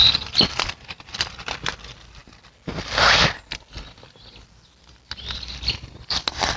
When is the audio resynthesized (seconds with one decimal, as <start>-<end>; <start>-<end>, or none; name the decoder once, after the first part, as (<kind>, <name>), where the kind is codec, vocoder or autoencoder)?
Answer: none